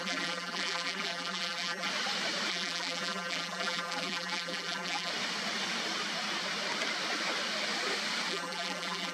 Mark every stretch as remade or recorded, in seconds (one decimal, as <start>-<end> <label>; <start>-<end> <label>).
0.0-1.9 remade; 1.9-2.5 recorded; 2.5-5.1 remade; 5.1-8.3 recorded; 8.3-9.1 remade